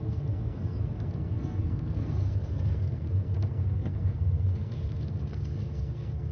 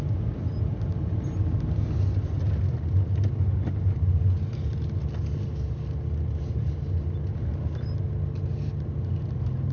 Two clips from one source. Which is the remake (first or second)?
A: first